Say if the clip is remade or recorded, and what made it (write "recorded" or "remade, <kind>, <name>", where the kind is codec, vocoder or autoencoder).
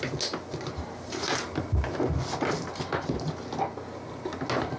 recorded